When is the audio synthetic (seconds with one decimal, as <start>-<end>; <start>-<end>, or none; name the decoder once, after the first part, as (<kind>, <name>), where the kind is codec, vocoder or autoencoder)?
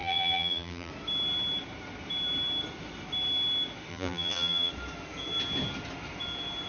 0.0-0.9 (vocoder, BigVGAN v2); 3.9-4.7